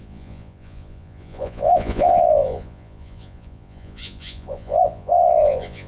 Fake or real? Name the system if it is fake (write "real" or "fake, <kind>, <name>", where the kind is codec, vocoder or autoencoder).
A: fake, vocoder, Vocos